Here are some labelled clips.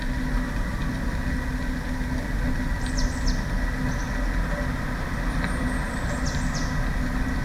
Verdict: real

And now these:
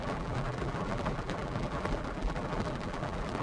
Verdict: fake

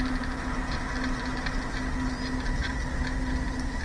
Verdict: real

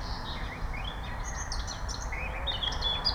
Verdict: real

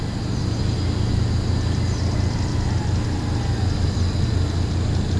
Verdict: real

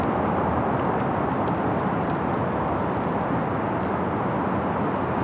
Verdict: real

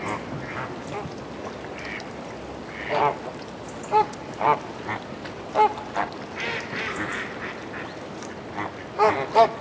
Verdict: real